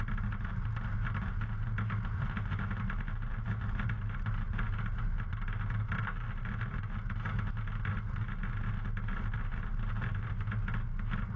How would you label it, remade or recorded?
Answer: recorded